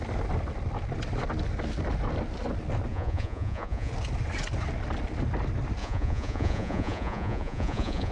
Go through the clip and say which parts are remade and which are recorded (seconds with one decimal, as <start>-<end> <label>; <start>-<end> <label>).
0.0-2.9 recorded; 2.9-3.9 remade; 3.9-5.8 recorded; 5.8-8.1 remade

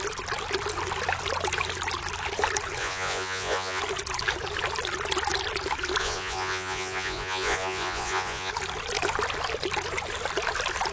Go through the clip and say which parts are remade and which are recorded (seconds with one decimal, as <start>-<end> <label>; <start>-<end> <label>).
0.0-2.8 recorded; 2.8-3.8 remade; 3.8-6.0 recorded; 6.0-8.5 remade; 8.5-10.9 recorded